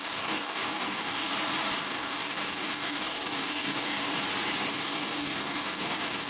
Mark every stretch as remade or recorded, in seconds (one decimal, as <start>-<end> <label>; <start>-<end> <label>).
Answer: 0.0-1.3 remade; 1.3-1.8 recorded; 1.8-4.1 remade; 4.1-4.7 recorded; 4.7-6.3 remade